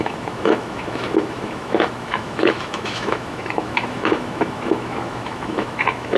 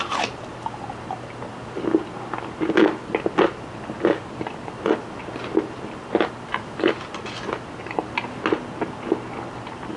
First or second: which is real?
second